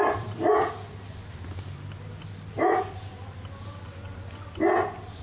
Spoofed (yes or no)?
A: no